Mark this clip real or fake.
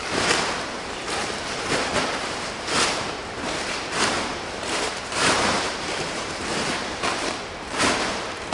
fake